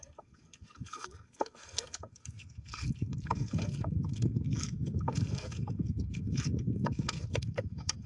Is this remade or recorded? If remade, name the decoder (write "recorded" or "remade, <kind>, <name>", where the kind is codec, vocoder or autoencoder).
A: remade, codec, SNAC